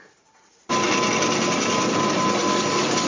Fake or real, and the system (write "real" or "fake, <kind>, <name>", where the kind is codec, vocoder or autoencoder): real